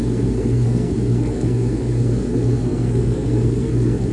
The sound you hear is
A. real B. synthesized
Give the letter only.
B